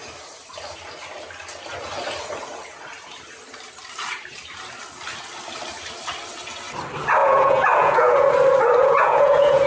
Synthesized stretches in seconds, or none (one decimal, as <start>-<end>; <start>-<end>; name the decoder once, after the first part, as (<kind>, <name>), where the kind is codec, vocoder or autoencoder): 7.2-8.3 (vocoder, Vocos); 8.8-9.7